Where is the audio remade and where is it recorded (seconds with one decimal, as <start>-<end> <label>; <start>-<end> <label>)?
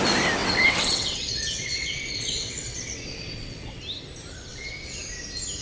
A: 0.0-0.4 recorded; 0.4-3.8 remade; 3.8-4.5 recorded; 4.5-5.0 remade; 5.0-5.6 recorded